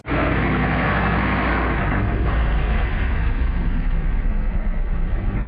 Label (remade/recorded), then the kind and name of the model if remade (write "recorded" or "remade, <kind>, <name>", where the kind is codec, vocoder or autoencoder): remade, codec, SNAC